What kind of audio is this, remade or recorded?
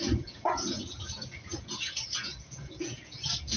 remade